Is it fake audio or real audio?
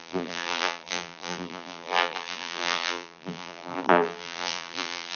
fake